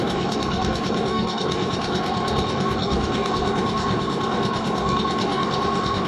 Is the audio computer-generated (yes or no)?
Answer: yes